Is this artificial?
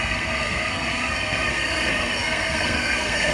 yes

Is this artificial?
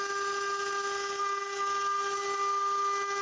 no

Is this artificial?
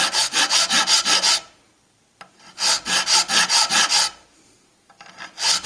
no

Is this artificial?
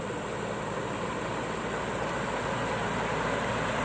no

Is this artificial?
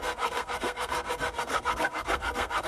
yes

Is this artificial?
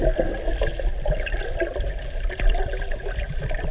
no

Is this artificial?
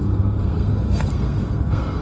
yes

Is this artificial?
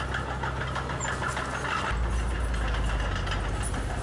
no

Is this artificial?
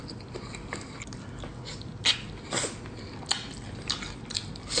no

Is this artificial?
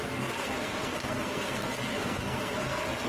yes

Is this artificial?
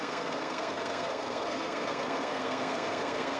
yes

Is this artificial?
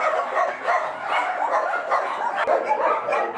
no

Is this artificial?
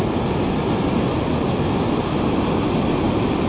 no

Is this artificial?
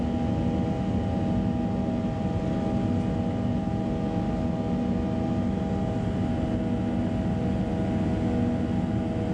no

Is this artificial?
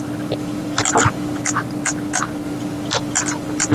no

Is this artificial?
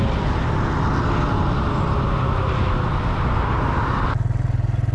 no